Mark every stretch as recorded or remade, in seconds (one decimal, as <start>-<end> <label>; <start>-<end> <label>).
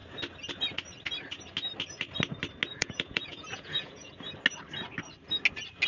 0.0-2.7 recorded; 2.7-4.1 remade; 4.1-5.9 recorded